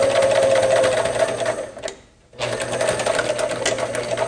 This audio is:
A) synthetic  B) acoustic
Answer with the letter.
B